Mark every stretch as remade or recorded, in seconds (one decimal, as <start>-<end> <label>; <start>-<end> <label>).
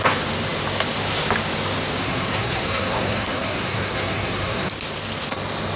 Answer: 0.0-2.0 recorded; 2.0-4.7 remade; 4.7-5.8 recorded